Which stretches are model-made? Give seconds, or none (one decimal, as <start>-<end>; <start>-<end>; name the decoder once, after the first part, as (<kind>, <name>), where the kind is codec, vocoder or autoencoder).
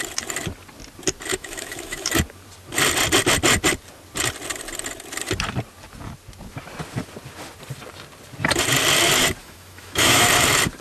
1.3-2.1 (autoencoder, DAC-VAE); 9.4-10.3